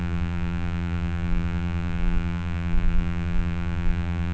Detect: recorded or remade remade